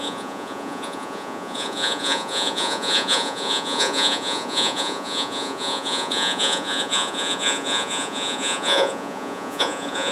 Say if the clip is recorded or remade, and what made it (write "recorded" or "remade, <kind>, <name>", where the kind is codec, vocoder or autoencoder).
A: remade, vocoder, Vocos